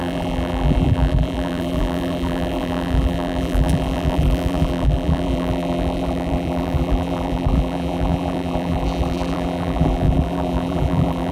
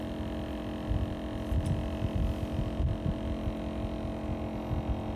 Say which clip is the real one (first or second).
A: second